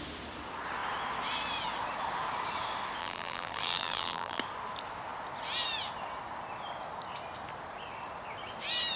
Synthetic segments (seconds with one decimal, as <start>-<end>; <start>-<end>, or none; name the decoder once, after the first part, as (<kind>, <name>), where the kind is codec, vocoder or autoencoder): 3.0-4.4 (vocoder, BigVGAN v2)